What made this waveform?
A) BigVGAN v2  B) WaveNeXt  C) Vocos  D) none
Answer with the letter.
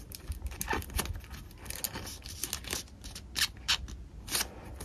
D